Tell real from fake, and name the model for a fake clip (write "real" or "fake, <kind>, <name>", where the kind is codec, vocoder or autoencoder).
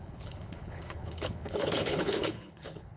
fake, codec, HILCodec